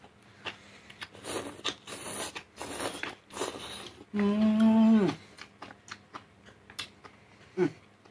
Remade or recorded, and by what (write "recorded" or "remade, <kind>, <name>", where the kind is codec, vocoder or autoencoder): recorded